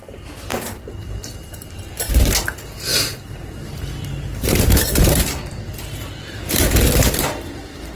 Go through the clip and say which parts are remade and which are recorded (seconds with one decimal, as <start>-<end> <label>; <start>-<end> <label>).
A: 0.0-0.5 recorded; 0.5-2.3 remade; 2.3-2.9 recorded; 2.9-6.7 remade; 6.7-8.0 recorded